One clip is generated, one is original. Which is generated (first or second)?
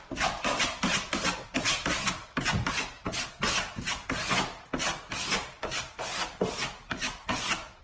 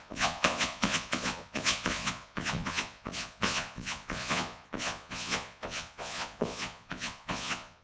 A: second